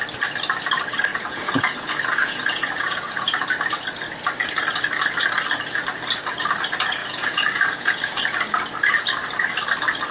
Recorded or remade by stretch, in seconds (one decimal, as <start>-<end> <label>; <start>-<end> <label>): 0.0-1.1 recorded; 1.1-3.5 remade; 3.5-7.0 recorded; 7.0-8.2 remade; 8.2-10.1 recorded